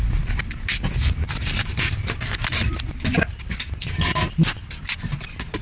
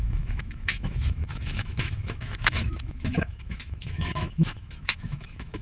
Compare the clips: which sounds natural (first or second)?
first